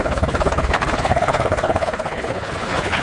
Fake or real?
fake